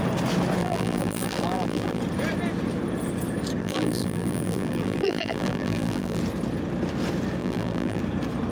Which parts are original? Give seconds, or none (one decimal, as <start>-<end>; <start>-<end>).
0.0-0.6; 2.0-3.6; 6.2-7.4; 8.0-8.5